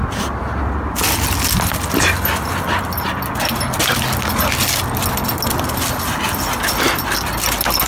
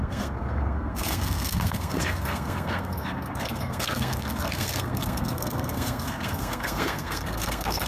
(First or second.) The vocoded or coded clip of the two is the second